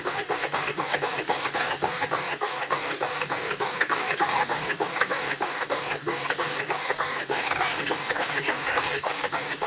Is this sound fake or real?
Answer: fake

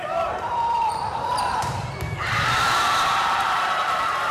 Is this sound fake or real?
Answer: fake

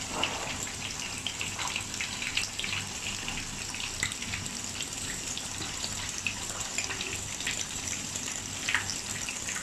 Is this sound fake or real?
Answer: fake